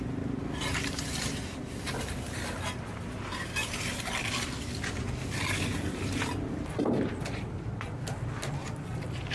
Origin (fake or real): fake